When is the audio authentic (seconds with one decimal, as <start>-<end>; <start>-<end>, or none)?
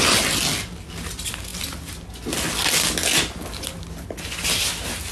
0.0-5.1